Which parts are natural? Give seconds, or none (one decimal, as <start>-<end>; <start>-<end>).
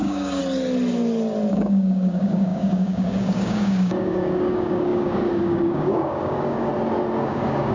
0.4-1.5; 6.7-7.2